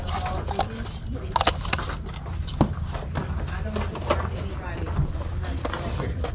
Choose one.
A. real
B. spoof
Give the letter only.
A